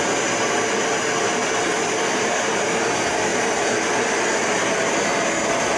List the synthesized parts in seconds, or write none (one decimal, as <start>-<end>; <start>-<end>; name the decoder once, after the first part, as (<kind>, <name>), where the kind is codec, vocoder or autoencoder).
none